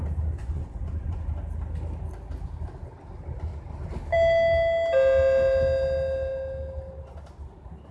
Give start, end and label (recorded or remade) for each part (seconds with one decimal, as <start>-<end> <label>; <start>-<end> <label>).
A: 0.0-0.4 recorded; 0.4-1.3 remade; 1.3-7.9 recorded